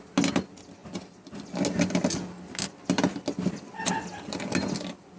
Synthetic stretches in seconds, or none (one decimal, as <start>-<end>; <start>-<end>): none